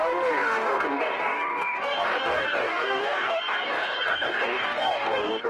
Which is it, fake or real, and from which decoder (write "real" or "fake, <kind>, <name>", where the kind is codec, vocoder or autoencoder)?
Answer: fake, codec, DAC